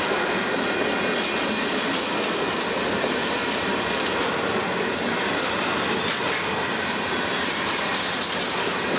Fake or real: real